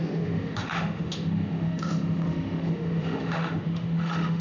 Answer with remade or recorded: remade